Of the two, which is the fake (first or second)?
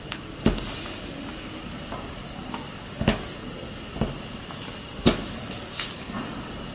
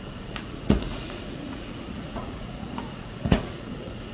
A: second